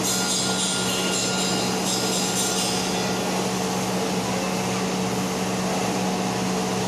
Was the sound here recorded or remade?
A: recorded